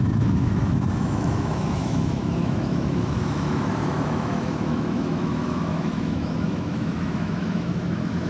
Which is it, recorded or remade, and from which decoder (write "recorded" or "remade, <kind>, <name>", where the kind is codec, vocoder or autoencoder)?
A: remade, autoencoder, DAC-VAE